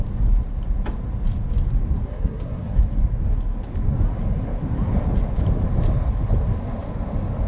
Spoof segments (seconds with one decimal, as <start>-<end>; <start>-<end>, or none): 2.1-2.8